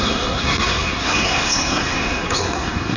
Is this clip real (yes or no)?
no